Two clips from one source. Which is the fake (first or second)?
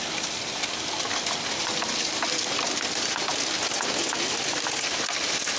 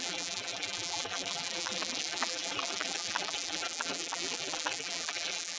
second